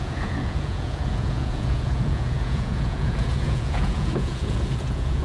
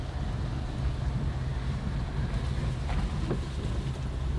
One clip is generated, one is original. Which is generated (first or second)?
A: first